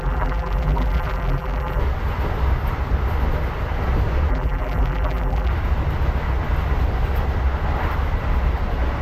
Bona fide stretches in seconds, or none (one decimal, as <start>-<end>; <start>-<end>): 1.8-4.3; 5.5-9.0